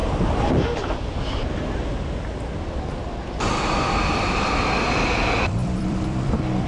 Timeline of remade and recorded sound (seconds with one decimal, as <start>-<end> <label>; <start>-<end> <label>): 0.0-0.5 remade; 0.5-5.6 recorded; 5.6-6.3 remade; 6.3-6.7 recorded